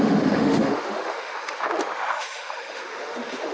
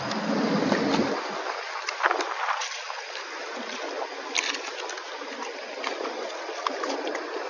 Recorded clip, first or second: second